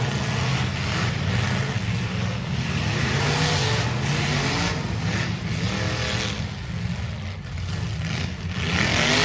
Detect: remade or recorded recorded